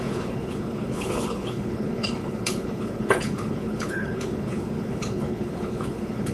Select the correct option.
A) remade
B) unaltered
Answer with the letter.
A